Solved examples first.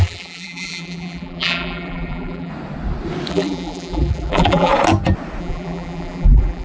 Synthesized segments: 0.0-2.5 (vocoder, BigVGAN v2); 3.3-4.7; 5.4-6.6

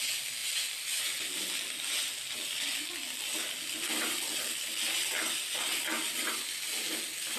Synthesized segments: none

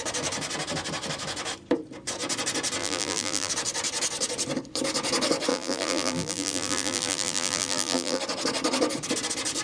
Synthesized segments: 2.8-3.5 (vocoder, BigVGAN v2); 5.5-8.2